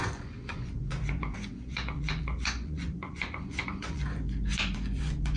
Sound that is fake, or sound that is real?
fake